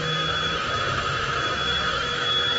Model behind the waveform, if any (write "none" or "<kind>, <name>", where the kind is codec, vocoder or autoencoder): autoencoder, DAC-VAE